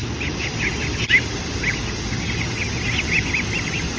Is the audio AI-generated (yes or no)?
no